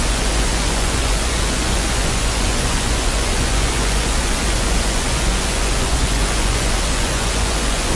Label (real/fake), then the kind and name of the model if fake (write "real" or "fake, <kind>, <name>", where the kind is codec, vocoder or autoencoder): fake, vocoder, Vocos